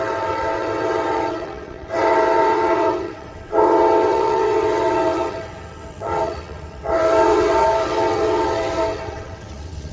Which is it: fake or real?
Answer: fake